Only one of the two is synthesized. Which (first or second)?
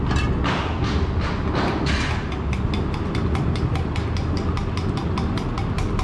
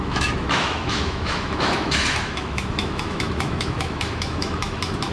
second